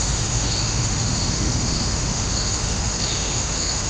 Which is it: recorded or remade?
remade